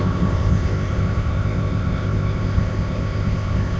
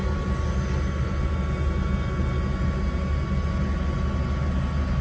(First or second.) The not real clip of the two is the first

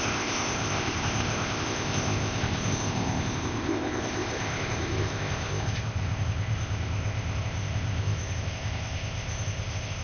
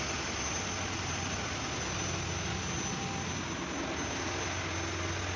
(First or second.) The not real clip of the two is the first